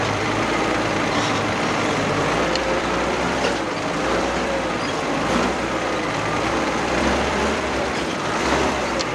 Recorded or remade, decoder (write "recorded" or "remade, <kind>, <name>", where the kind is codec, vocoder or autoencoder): remade, vocoder, BigVGAN v2